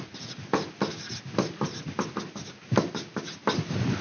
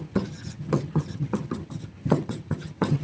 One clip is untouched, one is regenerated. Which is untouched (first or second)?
first